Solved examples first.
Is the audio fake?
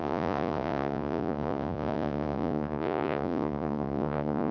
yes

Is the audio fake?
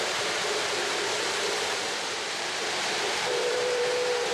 yes